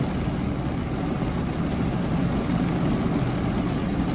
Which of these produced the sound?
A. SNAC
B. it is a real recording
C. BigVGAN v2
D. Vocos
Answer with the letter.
B